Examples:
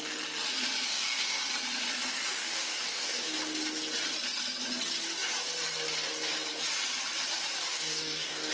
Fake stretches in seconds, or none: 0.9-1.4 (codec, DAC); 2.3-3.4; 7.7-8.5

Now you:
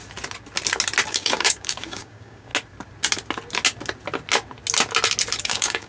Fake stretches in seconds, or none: 1.1-2.5 (codec, DAC); 5.4-5.9

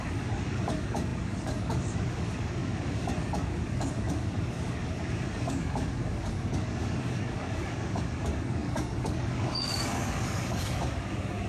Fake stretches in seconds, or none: 0.0-11.5 (codec, DAC)